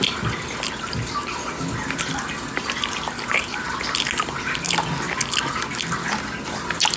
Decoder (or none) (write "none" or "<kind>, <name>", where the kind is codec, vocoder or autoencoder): none